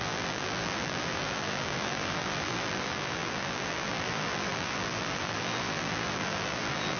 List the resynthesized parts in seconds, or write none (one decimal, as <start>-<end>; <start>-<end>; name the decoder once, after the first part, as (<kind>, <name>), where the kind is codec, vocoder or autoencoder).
0.0-7.0 (vocoder, BigVGAN v2)